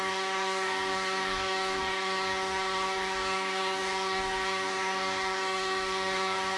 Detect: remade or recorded remade